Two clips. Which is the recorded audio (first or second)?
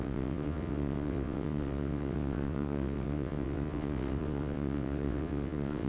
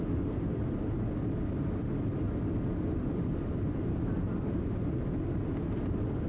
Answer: second